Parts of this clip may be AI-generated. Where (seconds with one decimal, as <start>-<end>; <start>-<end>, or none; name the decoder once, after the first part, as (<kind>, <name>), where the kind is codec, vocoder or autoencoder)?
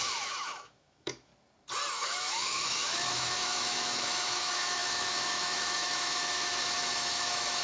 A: 0.0-1.3 (autoencoder, DAC-VAE); 1.9-7.6